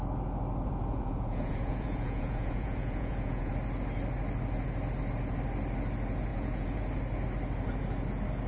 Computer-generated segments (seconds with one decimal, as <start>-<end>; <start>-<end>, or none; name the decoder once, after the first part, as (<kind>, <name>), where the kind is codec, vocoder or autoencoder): 0.9-3.5 (vocoder, Vocos); 6.3-6.8